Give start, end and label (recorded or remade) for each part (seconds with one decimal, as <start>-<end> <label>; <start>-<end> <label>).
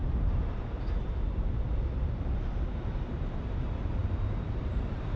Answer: 0.0-4.0 remade; 4.0-4.6 recorded; 4.6-5.2 remade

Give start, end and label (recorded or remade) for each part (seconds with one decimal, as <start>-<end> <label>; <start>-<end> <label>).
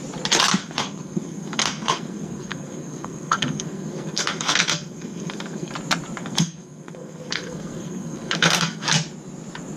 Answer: 0.0-0.6 recorded; 0.6-5.7 remade; 5.7-6.2 recorded; 6.2-8.9 remade; 8.9-9.8 recorded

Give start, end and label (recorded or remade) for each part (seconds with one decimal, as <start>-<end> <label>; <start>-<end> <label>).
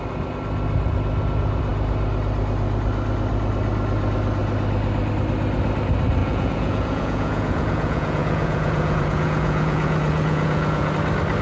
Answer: 0.0-6.2 recorded; 6.2-10.9 remade; 10.9-11.4 recorded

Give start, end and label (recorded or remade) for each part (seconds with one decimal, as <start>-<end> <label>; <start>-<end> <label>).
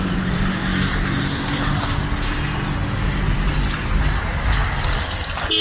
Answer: 0.0-0.6 remade; 0.6-4.0 recorded; 4.0-4.6 remade; 4.6-5.6 recorded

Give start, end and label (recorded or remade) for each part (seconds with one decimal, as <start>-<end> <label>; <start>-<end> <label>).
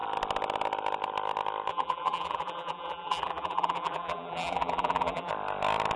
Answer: 0.0-1.7 recorded; 1.7-5.3 remade; 5.3-6.0 recorded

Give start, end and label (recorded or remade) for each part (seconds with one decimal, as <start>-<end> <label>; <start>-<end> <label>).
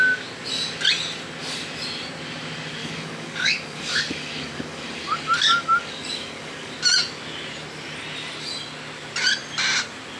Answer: 0.0-2.8 recorded; 2.8-6.7 remade; 6.7-10.2 recorded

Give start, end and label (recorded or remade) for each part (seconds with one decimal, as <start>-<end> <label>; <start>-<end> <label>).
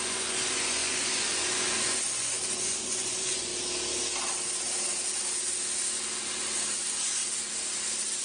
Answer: 0.0-3.5 remade; 3.5-6.8 recorded; 6.8-7.2 remade; 7.2-8.2 recorded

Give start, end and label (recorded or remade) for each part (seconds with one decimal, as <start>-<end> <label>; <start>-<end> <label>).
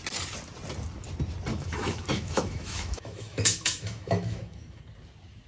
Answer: 0.0-1.5 recorded; 1.5-4.8 remade; 4.8-5.5 recorded